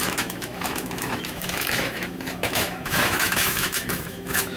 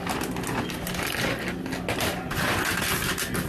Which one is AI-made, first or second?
first